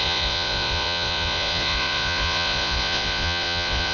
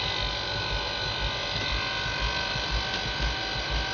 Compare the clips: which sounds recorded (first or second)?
second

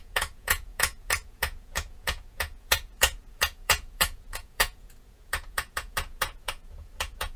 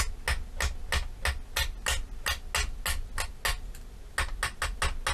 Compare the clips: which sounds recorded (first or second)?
second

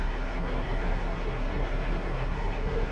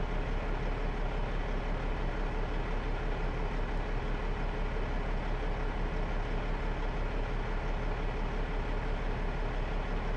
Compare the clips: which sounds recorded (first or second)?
second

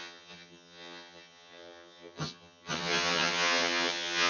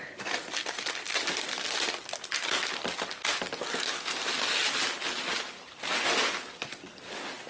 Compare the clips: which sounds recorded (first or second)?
second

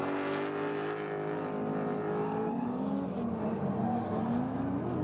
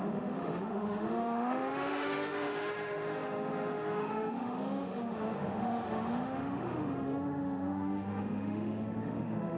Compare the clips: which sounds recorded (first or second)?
first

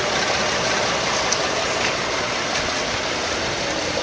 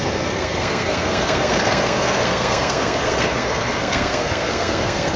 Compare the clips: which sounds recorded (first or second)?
first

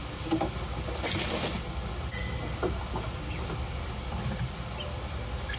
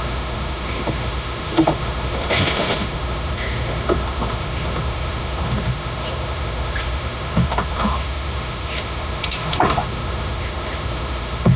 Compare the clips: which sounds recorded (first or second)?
first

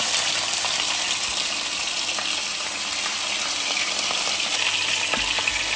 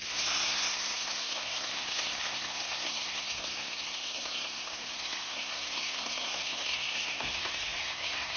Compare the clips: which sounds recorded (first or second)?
first